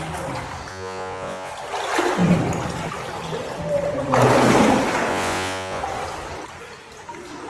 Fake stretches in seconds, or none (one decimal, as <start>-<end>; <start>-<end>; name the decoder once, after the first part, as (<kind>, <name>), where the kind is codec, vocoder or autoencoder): 0.7-1.5 (vocoder, Vocos); 5.1-5.8